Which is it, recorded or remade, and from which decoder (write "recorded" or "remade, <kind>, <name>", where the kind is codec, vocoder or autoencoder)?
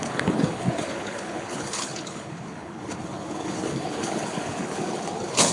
remade, codec, HILCodec